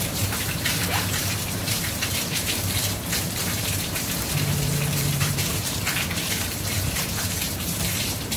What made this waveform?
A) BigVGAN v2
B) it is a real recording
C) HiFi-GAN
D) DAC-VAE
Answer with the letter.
A